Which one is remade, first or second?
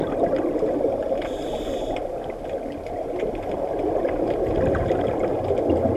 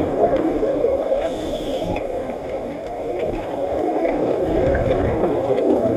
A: second